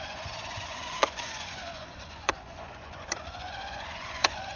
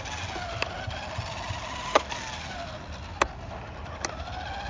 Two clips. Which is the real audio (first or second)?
second